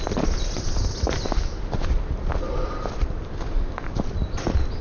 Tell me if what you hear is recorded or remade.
recorded